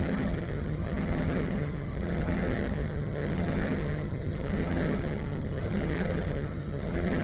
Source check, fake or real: fake